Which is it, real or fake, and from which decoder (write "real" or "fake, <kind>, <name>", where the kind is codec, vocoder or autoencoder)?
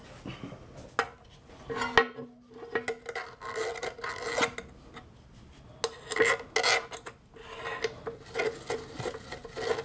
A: real